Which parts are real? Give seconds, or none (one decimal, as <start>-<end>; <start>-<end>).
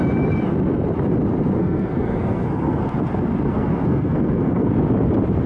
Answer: 0.0-1.6; 2.8-3.5; 4.7-5.5